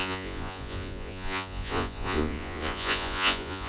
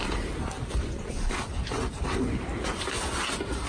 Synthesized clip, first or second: first